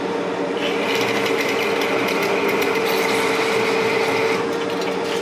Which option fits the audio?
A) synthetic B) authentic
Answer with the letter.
B